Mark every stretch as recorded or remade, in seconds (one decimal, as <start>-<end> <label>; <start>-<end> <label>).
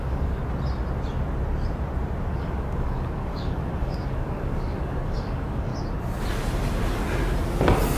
0.0-0.4 remade; 0.4-2.3 recorded; 2.3-5.7 remade; 5.7-8.0 recorded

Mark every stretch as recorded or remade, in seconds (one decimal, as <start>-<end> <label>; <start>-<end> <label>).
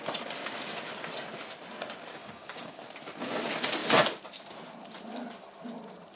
0.0-2.2 recorded; 2.2-2.8 remade; 2.8-6.2 recorded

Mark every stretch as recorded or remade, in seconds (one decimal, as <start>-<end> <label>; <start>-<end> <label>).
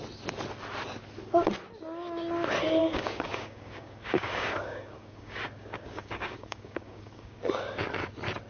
0.0-2.8 recorded; 2.8-7.4 remade; 7.4-8.5 recorded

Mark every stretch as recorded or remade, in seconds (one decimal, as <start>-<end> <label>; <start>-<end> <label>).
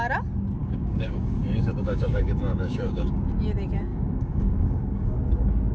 0.0-0.6 recorded; 0.6-3.2 remade; 3.2-3.9 recorded; 3.9-5.2 remade; 5.2-5.7 recorded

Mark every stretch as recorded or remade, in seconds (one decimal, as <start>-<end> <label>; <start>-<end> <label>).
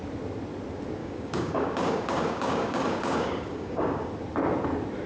0.0-1.0 recorded; 1.0-4.1 remade; 4.1-5.1 recorded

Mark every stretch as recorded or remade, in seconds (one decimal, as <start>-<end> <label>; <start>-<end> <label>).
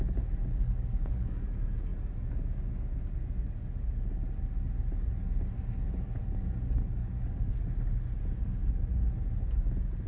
0.0-0.4 recorded; 0.4-1.5 remade; 1.5-7.0 recorded; 7.0-7.6 remade; 7.6-10.1 recorded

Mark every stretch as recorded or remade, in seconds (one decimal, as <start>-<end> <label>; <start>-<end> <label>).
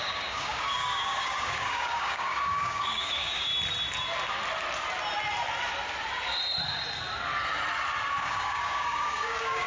0.0-3.5 remade; 3.5-8.2 recorded; 8.2-9.7 remade